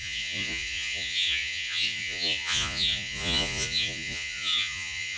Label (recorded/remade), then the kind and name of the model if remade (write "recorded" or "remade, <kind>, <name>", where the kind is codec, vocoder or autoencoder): remade, vocoder, Vocos